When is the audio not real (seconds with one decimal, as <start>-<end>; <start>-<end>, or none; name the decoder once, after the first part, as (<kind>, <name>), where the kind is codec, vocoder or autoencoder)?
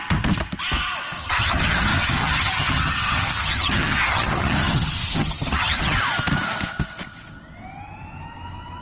1.2-6.0 (vocoder, HiFi-GAN)